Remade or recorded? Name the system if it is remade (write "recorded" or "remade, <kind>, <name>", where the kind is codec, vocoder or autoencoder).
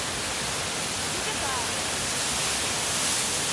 recorded